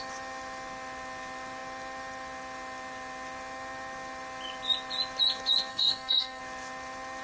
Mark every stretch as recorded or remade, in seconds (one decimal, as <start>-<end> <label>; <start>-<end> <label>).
0.0-5.7 recorded; 5.7-6.4 remade; 6.4-7.2 recorded